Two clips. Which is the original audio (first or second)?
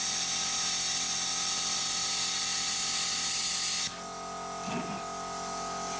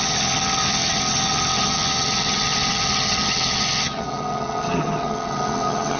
first